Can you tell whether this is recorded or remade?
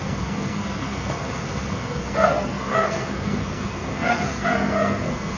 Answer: remade